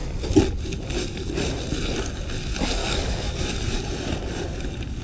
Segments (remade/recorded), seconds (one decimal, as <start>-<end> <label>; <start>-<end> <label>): 0.0-2.8 recorded; 2.8-3.8 remade; 3.8-5.0 recorded